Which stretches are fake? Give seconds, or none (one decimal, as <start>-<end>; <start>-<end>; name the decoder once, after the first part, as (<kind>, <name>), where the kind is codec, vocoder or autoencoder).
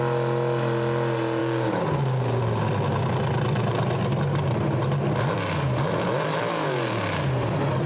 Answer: 1.4-2.4 (codec, DAC)